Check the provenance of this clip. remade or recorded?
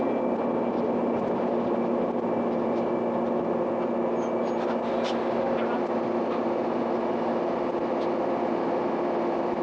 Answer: recorded